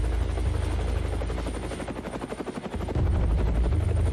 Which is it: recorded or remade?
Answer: recorded